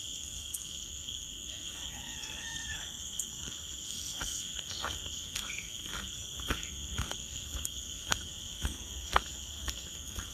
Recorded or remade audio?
remade